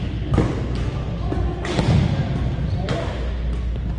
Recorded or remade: recorded